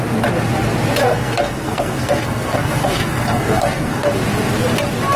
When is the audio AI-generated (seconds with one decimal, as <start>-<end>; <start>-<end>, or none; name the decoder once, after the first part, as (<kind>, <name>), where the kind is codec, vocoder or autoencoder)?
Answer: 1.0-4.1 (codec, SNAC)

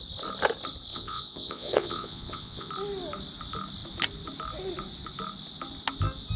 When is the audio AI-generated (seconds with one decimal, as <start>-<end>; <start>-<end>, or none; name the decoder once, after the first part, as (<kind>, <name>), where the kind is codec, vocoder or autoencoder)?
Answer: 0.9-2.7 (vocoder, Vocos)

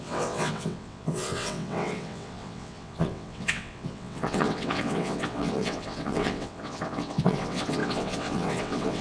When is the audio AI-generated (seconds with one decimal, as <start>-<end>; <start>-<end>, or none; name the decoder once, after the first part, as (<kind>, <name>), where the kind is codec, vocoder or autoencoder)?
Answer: 0.0-9.0 (vocoder, WaveNeXt)

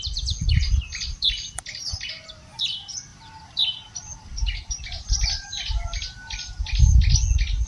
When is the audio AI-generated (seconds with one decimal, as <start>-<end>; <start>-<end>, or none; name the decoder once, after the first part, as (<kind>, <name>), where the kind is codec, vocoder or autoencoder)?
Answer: 0.5-2.1 (vocoder, BigVGAN v2); 3.1-7.0

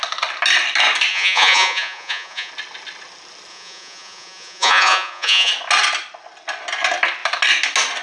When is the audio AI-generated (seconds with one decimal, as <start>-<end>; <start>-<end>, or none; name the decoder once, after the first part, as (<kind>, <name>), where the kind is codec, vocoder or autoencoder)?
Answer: 1.1-2.5 (vocoder, Vocos); 3.5-5.5

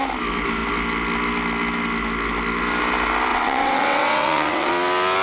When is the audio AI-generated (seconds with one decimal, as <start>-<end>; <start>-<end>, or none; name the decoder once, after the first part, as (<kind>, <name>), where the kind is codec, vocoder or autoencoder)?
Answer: 3.3-4.7 (vocoder, WaveNeXt)